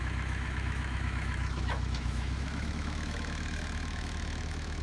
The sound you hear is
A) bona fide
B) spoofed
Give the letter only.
B